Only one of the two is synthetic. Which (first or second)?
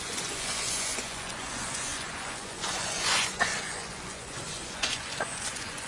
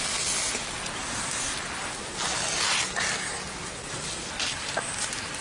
first